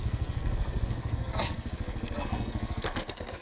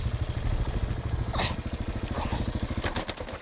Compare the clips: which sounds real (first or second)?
second